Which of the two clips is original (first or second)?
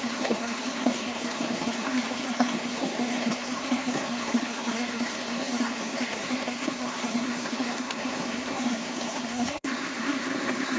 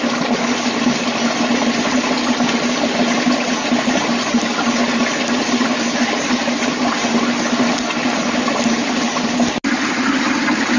second